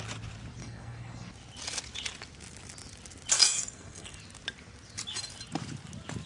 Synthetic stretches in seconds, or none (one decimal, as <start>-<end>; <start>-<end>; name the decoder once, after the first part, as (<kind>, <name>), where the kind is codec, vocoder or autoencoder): 0.6-1.3 (codec, SNAC); 3.4-4.2